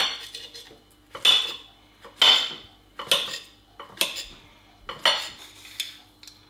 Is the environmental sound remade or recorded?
recorded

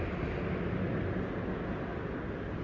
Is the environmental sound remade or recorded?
recorded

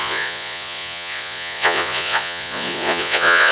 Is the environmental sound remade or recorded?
remade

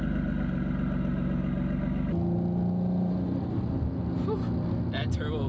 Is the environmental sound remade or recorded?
recorded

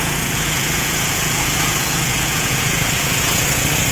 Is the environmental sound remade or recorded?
remade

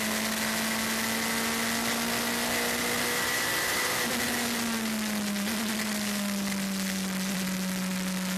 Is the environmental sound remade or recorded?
recorded